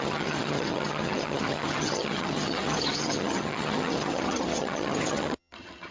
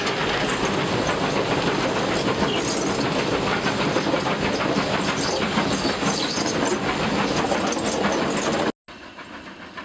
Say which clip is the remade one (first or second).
first